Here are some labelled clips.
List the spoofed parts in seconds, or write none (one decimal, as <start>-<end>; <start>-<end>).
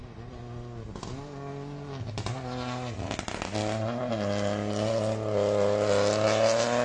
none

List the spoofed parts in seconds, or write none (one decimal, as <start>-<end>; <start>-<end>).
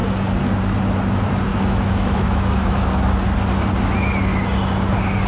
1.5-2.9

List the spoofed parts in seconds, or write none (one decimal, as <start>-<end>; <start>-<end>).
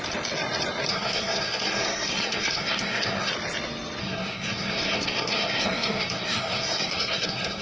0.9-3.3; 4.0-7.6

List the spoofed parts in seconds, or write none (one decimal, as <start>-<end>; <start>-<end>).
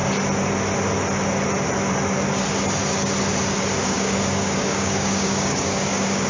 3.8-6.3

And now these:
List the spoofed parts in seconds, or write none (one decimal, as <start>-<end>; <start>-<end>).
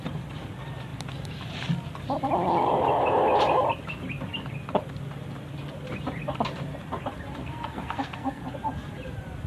7.4-8.4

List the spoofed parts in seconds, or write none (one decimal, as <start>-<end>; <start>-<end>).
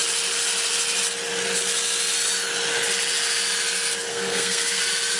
4.1-4.8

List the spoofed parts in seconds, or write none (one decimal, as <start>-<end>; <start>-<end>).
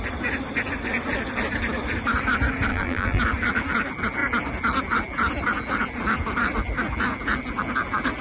2.7-3.2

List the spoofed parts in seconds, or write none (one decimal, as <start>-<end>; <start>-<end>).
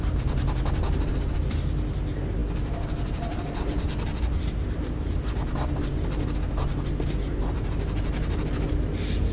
none